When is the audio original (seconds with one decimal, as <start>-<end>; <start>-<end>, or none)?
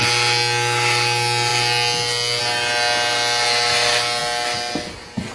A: 0.0-5.3